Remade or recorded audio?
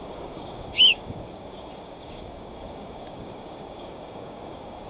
remade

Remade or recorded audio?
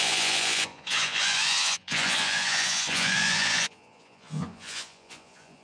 remade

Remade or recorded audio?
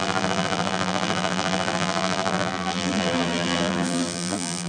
remade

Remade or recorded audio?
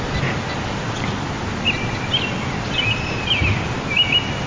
recorded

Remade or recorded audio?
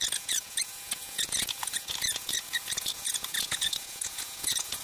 remade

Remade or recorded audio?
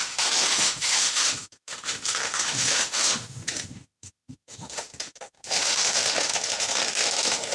remade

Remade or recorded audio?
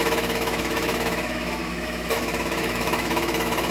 remade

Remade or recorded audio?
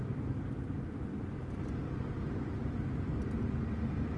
recorded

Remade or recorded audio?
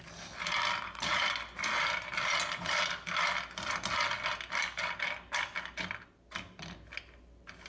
recorded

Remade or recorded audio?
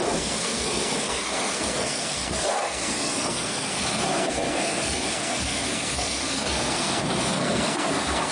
remade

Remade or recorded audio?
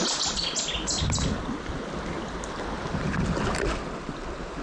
recorded